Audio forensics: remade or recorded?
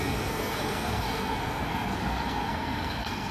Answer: remade